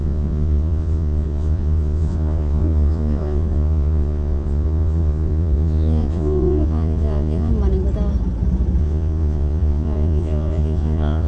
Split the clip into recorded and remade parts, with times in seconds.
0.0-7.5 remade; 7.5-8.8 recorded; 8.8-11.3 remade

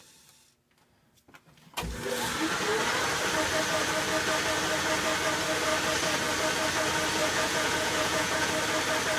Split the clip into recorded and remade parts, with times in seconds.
0.0-7.2 recorded; 7.2-8.5 remade; 8.5-9.2 recorded

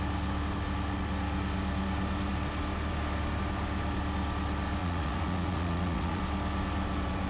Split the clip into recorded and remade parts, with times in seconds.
0.0-4.8 recorded; 4.8-6.2 remade; 6.2-7.3 recorded

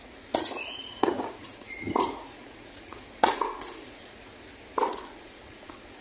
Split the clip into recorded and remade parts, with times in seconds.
0.0-4.3 remade; 4.3-4.9 recorded; 4.9-6.0 remade

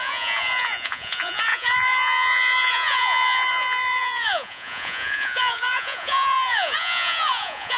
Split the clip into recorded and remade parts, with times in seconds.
0.0-7.8 remade

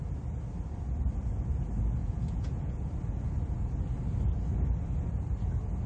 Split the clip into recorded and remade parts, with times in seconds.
0.0-2.0 recorded; 2.0-2.9 remade; 2.9-5.9 recorded